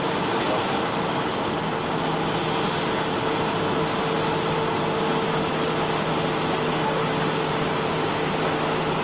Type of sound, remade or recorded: recorded